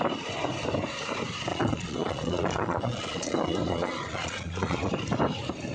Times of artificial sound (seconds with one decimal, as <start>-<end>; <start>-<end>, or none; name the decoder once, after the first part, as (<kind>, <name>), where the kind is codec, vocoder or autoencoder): 1.5-4.9 (vocoder, Vocos)